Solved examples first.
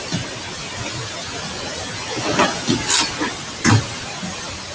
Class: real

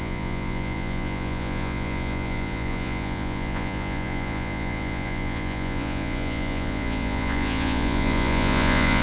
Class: fake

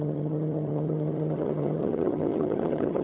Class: fake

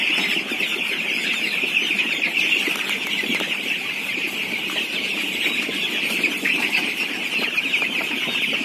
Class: fake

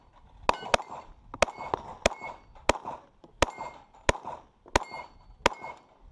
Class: real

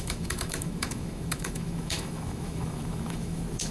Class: fake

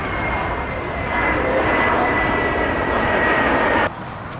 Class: real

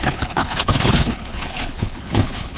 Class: fake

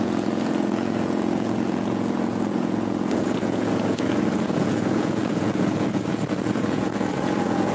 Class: fake